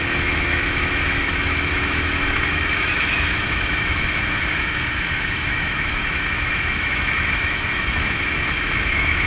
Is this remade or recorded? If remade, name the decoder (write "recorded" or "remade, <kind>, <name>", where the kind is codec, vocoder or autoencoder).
remade, autoencoder, DAC-VAE